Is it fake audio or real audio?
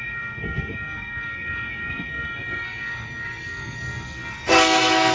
fake